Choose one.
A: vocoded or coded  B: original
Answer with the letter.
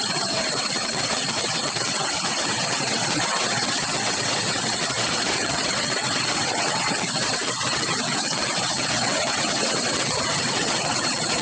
A